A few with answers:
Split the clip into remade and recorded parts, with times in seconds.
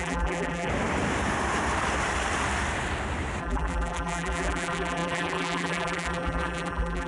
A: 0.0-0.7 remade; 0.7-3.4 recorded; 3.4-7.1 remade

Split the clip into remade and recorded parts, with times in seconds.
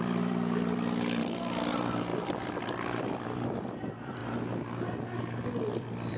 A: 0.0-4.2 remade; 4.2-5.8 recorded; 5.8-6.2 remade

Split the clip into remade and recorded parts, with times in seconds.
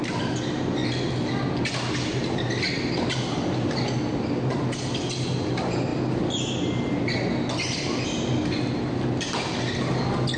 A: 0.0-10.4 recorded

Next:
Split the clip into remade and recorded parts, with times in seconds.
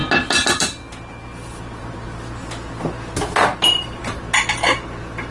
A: 0.0-3.5 recorded; 3.5-4.2 remade; 4.2-5.3 recorded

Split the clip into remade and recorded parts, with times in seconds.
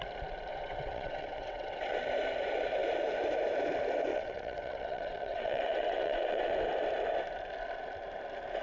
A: 0.0-0.5 recorded; 0.5-2.0 remade; 2.0-4.1 recorded; 4.1-6.5 remade; 6.5-8.6 recorded